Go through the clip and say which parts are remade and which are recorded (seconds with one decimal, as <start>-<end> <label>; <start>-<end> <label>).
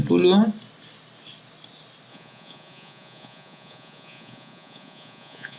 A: 0.0-2.1 recorded; 2.1-5.6 remade